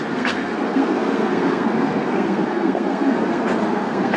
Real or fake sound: fake